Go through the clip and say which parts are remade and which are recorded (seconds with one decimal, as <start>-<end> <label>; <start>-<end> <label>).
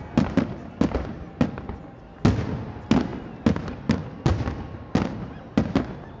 0.0-6.2 recorded